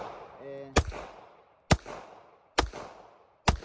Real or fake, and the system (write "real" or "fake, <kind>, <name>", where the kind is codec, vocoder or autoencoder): real